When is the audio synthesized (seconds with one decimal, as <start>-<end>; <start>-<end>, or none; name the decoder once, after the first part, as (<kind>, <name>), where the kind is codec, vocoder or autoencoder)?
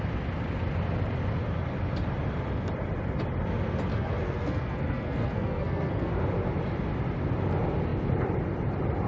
3.9-6.1 (codec, SNAC)